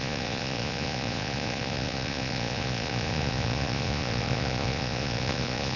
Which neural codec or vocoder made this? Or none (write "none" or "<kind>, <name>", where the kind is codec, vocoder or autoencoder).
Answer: vocoder, Vocos